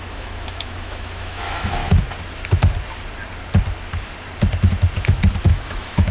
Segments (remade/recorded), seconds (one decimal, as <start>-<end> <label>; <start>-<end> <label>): 0.0-1.8 remade; 1.8-5.5 recorded; 5.5-6.1 remade